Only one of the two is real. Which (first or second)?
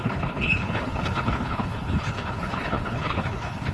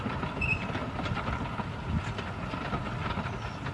second